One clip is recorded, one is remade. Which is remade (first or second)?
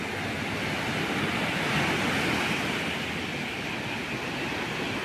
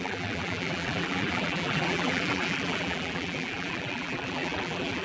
second